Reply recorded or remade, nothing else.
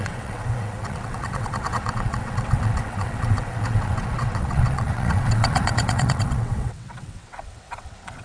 remade